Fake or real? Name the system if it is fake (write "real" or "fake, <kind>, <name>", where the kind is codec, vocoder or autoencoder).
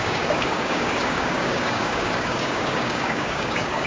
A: fake, codec, DAC